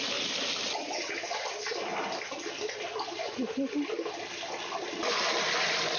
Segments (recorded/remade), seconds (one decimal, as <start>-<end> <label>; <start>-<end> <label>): 0.0-3.2 recorded; 3.2-3.7 remade; 3.7-6.0 recorded